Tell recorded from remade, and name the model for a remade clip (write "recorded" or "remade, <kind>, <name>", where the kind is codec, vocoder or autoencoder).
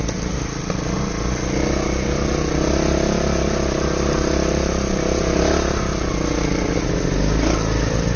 recorded